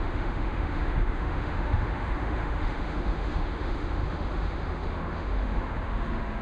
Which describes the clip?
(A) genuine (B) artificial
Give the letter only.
B